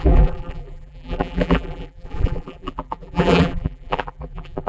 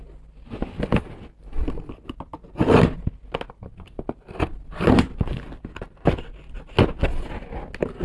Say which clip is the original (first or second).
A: second